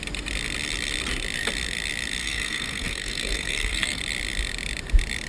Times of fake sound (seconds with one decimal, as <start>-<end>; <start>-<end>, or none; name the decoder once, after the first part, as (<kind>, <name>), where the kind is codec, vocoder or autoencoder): 2.2-4.0 (codec, SNAC)